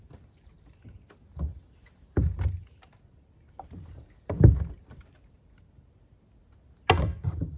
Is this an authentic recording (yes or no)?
yes